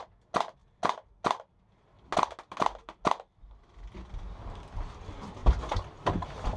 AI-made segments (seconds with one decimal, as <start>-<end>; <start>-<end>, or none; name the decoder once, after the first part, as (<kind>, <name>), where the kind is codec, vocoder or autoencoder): none